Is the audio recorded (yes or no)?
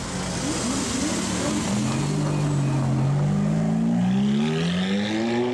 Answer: yes